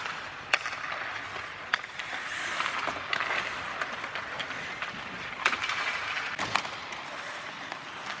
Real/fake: real